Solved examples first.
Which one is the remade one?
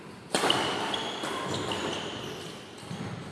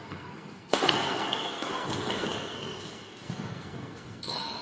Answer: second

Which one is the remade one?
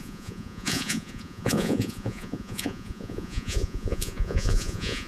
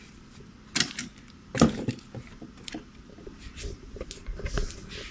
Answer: first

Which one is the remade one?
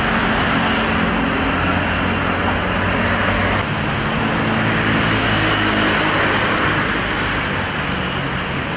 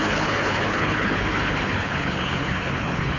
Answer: second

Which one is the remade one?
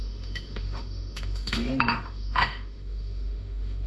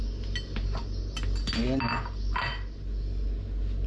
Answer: first